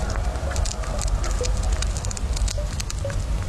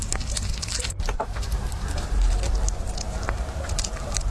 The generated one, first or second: second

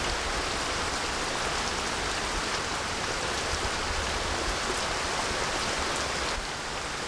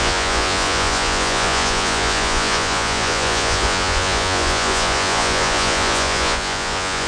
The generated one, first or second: second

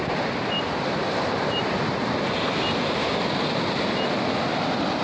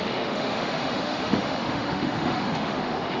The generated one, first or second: second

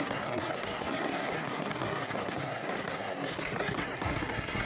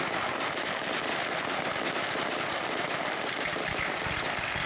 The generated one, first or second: first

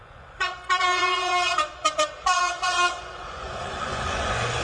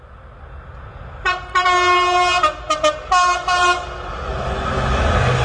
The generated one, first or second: first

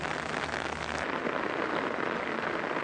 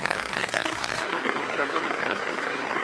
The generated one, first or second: second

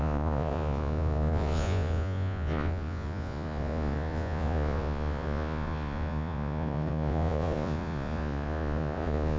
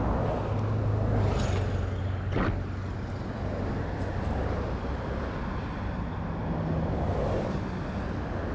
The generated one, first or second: first